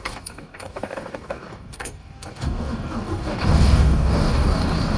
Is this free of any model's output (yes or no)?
no